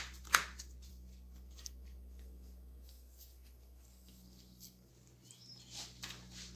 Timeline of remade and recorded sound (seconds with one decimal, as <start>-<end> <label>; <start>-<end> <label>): 0.0-0.9 recorded; 0.9-4.9 remade; 4.9-6.6 recorded